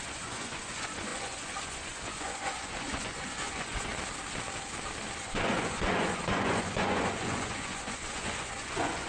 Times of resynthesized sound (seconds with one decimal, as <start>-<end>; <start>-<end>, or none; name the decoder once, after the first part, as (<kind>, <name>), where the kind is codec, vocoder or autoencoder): 0.0-3.9 (vocoder, Vocos); 5.2-9.1